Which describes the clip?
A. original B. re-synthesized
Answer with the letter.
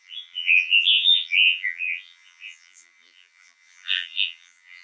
B